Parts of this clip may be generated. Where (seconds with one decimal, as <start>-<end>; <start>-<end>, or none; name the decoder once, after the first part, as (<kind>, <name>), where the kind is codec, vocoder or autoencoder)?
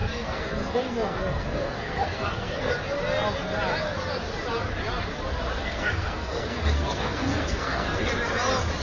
0.0-2.7 (codec, SNAC); 5.6-8.1